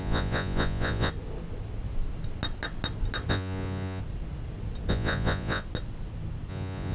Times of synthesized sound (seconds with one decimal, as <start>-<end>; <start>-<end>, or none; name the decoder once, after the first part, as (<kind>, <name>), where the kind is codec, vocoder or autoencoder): 0.0-1.1 (vocoder, Vocos); 3.3-4.0; 4.9-5.6; 6.5-6.9